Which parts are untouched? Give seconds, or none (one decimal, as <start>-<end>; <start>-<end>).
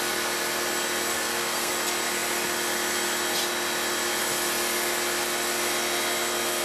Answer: 0.0-1.1; 1.7-6.6